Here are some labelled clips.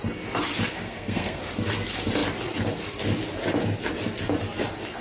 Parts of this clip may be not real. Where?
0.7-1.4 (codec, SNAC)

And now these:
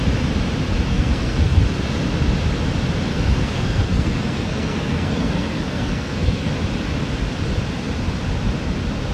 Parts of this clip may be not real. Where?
0.9-1.6 (codec, SNAC); 3.1-6.5

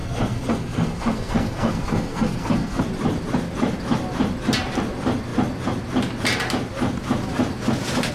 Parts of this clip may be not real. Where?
0.0-2.8 (codec, SNAC)

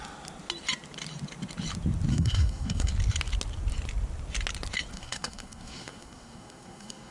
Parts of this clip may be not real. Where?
2.1-2.9 (codec, SNAC); 4.9-7.1

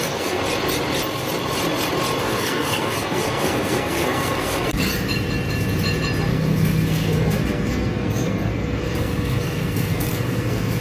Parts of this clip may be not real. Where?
0.0-0.4 (codec, SNAC); 2.2-4.9; 6.3-10.8